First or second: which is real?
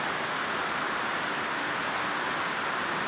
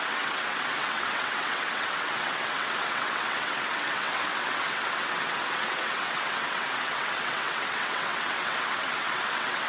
first